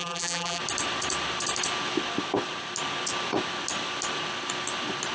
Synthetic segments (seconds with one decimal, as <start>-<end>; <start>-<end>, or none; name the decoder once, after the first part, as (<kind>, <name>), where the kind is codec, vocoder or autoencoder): 0.0-0.6 (vocoder, BigVGAN v2)